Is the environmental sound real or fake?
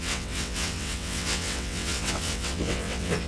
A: fake